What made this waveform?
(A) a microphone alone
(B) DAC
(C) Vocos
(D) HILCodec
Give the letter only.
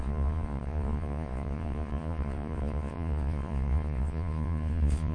C